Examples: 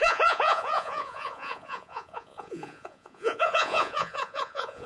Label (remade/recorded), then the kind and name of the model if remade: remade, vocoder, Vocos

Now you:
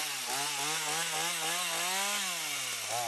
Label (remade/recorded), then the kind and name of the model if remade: recorded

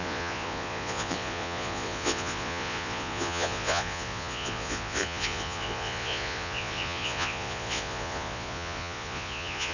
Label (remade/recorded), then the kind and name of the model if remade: remade, vocoder, Vocos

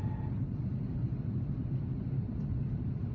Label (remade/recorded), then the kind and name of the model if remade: recorded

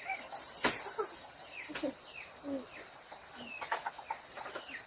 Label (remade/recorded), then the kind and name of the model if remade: remade, vocoder, BigVGAN v2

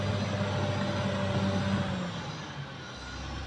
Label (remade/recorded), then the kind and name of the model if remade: recorded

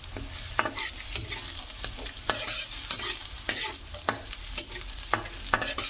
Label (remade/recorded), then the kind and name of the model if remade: recorded